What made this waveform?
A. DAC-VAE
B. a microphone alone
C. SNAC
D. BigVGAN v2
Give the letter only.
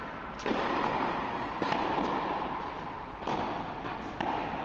D